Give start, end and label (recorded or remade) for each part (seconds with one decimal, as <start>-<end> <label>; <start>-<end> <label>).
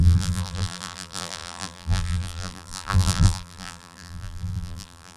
0.0-5.2 remade